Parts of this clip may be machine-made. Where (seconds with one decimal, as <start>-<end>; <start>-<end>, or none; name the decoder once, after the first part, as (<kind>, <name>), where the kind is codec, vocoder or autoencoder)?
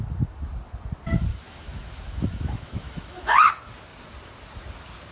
1.3-3.5 (autoencoder, DAC-VAE)